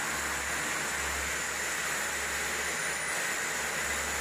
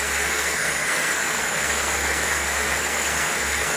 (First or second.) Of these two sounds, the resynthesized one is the second